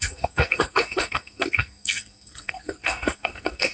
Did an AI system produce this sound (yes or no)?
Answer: yes